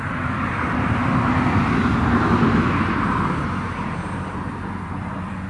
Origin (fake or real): real